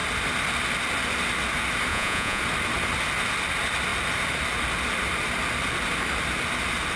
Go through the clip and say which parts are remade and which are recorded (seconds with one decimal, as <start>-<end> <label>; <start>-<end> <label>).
0.0-1.9 recorded; 1.9-2.4 remade; 2.4-7.0 recorded